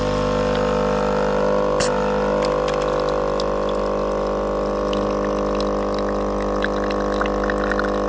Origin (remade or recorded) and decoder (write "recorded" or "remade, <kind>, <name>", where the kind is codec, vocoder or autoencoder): recorded